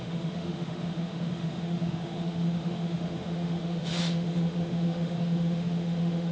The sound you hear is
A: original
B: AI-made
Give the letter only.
B